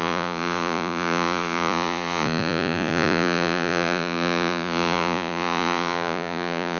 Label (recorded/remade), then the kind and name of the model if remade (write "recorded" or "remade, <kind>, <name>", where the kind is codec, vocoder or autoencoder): remade, vocoder, Vocos